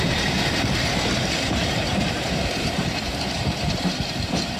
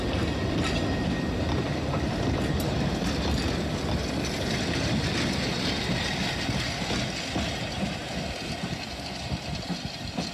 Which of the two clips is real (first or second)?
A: second